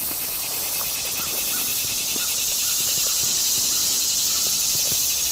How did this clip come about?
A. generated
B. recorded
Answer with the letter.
B